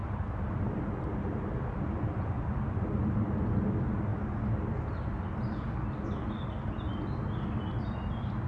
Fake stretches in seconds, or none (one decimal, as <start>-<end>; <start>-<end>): none